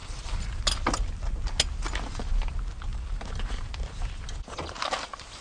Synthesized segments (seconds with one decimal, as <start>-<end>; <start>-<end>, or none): 0.0-0.6; 2.9-4.1